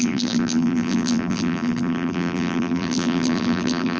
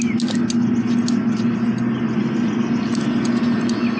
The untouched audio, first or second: second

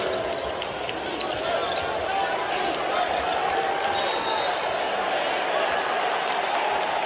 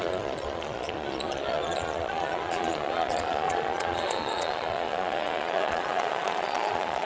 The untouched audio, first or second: first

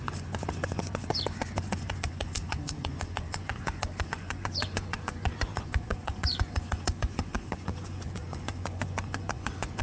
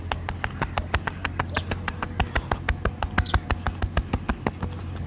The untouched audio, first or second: second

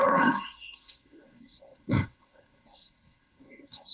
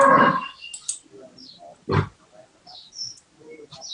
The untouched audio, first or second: second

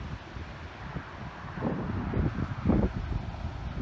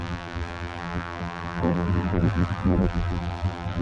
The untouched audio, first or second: first